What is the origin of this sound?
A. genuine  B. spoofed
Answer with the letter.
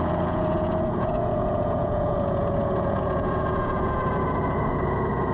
B